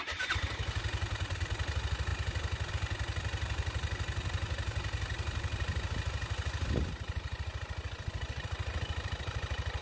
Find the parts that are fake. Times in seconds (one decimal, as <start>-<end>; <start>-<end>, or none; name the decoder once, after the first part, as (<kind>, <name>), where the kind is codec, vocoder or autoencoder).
none